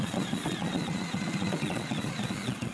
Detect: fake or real fake